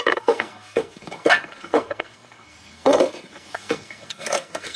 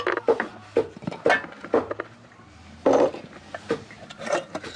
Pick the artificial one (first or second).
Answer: first